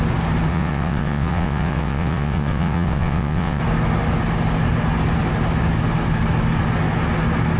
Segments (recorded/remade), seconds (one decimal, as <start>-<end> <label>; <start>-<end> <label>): 0.0-0.5 recorded; 0.5-3.6 remade; 3.6-7.6 recorded